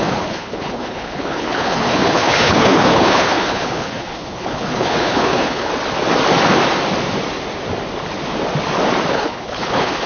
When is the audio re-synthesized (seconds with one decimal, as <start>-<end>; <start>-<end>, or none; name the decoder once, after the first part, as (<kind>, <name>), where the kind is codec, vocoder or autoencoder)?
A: 0.0-5.7 (codec, HILCodec); 9.1-10.1